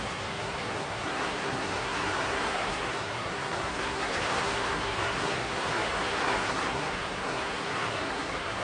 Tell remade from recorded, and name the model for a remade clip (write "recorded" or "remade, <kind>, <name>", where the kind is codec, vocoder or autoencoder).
remade, codec, SNAC